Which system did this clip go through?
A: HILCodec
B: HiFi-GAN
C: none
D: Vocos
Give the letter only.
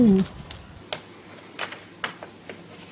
C